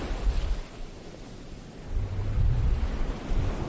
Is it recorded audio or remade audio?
recorded